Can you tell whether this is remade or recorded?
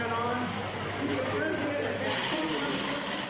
recorded